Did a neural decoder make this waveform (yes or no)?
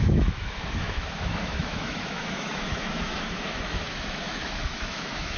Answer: yes